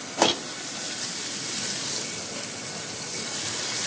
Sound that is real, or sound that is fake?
fake